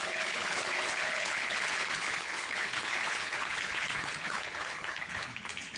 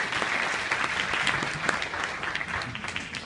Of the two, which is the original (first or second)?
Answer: second